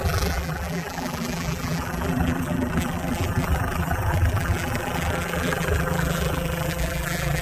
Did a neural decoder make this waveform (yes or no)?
yes